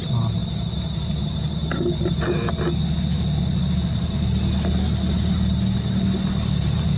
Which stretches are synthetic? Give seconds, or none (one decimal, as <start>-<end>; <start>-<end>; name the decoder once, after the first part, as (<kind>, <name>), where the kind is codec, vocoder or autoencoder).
none